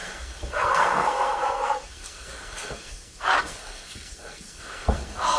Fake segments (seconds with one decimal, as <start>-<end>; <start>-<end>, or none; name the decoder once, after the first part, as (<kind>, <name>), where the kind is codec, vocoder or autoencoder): 0.0-5.4 (codec, SNAC)